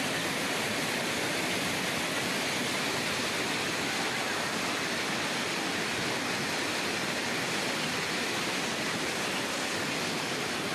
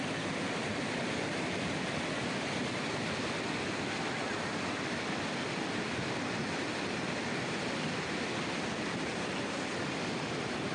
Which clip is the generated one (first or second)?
second